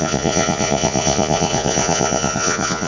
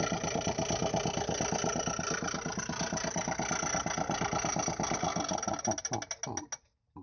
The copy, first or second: first